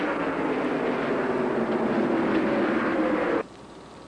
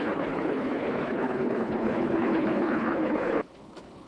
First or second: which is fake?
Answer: second